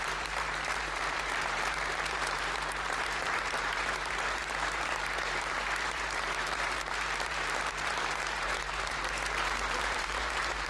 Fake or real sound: fake